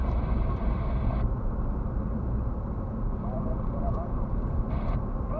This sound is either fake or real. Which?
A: fake